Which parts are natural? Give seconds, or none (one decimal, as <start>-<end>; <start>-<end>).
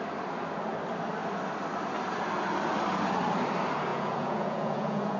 0.0-3.9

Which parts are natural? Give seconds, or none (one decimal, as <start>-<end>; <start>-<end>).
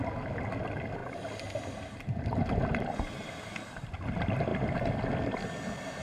0.0-6.0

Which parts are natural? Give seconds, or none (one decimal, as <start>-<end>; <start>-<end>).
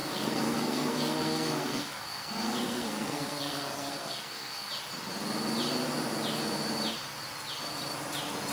4.7-8.5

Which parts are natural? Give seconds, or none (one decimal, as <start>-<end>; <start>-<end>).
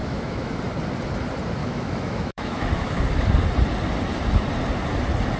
0.6-1.6; 3.0-5.4